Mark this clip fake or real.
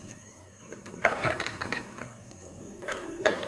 fake